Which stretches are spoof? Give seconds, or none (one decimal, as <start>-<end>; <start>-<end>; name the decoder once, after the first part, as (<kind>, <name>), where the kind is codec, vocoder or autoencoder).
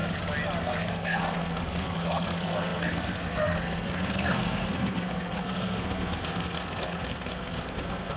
0.6-8.2 (codec, SNAC)